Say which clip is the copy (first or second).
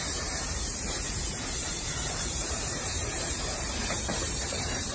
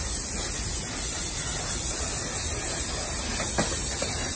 first